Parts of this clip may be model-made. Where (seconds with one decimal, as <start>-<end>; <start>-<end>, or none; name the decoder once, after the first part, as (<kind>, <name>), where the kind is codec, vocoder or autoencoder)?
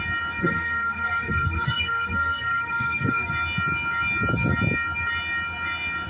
0.4-3.3 (codec, SNAC)